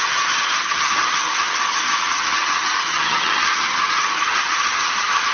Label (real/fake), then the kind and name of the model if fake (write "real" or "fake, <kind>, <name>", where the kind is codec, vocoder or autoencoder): fake, vocoder, HiFi-GAN